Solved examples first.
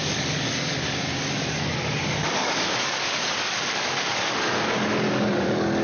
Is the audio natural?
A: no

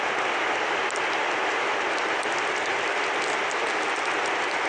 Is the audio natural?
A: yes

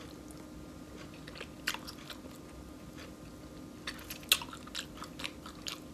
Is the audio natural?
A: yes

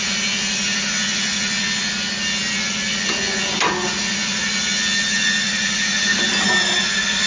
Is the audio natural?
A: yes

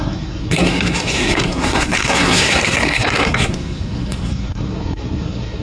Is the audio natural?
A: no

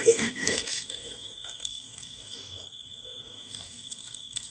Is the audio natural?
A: no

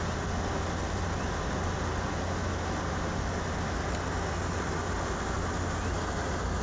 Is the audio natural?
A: yes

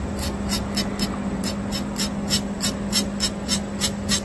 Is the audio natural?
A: yes